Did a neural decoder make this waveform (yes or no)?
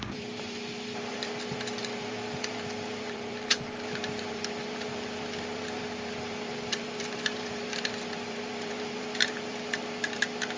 yes